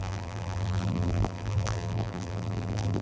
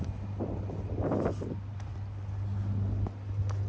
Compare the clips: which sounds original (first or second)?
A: second